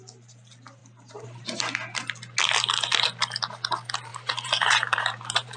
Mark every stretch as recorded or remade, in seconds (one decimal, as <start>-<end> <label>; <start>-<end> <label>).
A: 0.0-0.8 recorded; 0.8-1.6 remade; 1.6-4.1 recorded; 4.1-5.6 remade